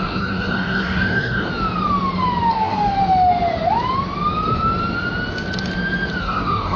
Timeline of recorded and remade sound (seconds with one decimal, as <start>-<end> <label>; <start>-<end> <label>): 0.0-1.5 remade; 1.5-2.5 recorded; 2.5-3.0 remade; 3.0-6.2 recorded; 6.2-6.8 remade